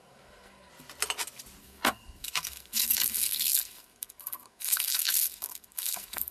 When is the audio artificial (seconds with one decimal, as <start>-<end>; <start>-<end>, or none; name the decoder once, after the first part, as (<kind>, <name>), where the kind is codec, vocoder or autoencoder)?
0.0-0.7 (codec, SNAC); 1.6-6.3